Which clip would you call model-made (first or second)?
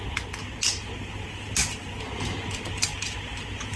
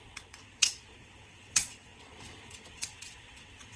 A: second